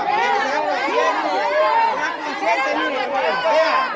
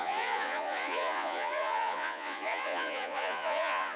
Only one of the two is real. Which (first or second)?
first